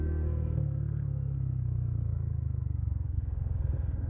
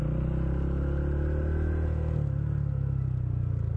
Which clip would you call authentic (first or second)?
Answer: second